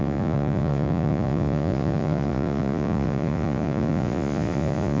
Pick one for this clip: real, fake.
fake